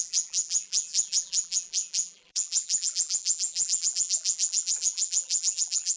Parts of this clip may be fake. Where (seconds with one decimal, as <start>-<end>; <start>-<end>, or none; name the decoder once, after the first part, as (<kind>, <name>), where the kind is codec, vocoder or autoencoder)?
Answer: 0.0-6.0 (vocoder, BigVGAN v2)